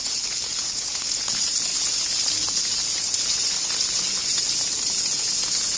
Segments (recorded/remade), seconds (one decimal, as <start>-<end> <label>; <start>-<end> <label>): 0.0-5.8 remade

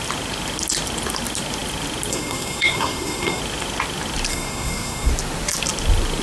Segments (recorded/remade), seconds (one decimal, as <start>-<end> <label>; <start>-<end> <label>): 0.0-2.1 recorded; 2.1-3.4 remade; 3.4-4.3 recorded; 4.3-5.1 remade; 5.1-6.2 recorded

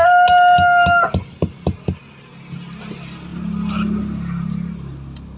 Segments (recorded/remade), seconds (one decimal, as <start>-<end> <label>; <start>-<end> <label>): 0.0-5.4 recorded